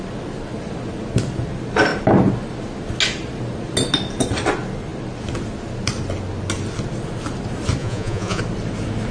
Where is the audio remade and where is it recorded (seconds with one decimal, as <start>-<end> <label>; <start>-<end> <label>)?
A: 0.0-7.8 recorded; 7.8-8.4 remade; 8.4-9.1 recorded